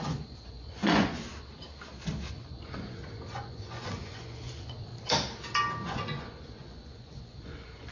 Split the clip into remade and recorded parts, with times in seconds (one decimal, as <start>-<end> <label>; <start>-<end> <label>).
0.0-1.2 remade; 1.2-2.3 recorded; 2.3-4.9 remade; 4.9-5.9 recorded; 5.9-7.9 remade

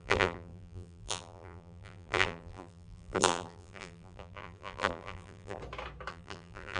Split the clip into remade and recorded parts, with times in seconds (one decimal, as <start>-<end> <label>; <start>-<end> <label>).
0.0-5.6 remade; 5.6-6.1 recorded; 6.1-6.8 remade

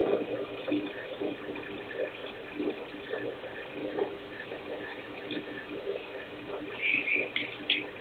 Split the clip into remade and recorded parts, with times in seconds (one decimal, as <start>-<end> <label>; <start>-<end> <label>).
0.0-1.4 remade; 1.4-3.8 recorded; 3.8-6.6 remade; 6.6-8.0 recorded

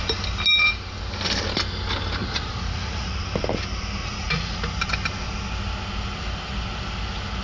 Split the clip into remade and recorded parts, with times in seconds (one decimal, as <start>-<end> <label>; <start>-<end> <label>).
0.0-2.2 recorded; 2.2-3.2 remade; 3.2-4.0 recorded; 4.0-4.6 remade; 4.6-7.4 recorded

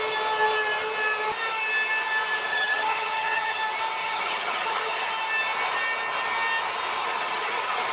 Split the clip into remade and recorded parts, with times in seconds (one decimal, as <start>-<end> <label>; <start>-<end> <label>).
0.0-2.5 recorded; 2.5-3.6 remade; 3.6-4.0 recorded; 4.0-5.1 remade; 5.1-7.0 recorded; 7.0-7.9 remade

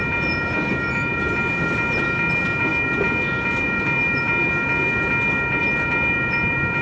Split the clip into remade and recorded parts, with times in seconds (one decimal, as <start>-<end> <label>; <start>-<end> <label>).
0.0-6.8 recorded

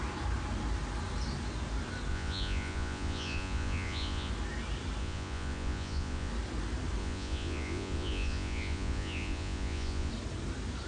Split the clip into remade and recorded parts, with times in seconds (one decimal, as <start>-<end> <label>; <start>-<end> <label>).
0.0-2.1 recorded; 2.1-4.3 remade; 4.3-5.0 recorded; 5.0-6.3 remade; 6.3-7.0 recorded; 7.0-10.1 remade; 10.1-10.9 recorded

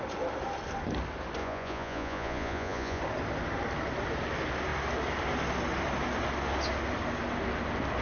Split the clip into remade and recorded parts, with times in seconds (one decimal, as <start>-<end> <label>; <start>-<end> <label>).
0.0-1.4 recorded; 1.4-3.0 remade; 3.0-8.0 recorded